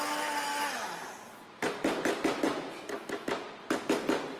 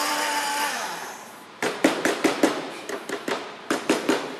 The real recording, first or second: first